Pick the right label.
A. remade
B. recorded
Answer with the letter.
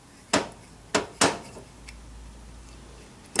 B